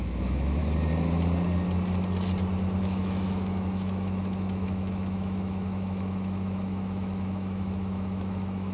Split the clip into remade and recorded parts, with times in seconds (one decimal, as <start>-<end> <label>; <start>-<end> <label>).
0.0-0.6 remade; 0.6-2.8 recorded; 2.8-8.7 remade